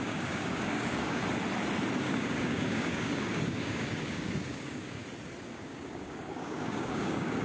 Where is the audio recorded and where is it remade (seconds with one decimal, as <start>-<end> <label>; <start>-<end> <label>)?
0.0-1.2 remade; 1.2-2.0 recorded; 2.0-5.0 remade; 5.0-5.5 recorded; 5.5-7.4 remade